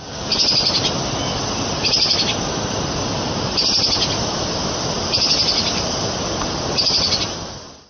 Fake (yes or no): no